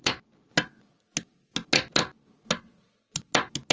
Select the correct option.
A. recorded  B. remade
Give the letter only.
A